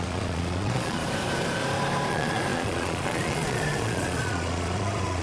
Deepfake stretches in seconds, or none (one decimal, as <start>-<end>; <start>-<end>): 0.0-1.0; 2.1-5.2